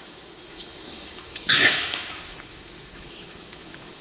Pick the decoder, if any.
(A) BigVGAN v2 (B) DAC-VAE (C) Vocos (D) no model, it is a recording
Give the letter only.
B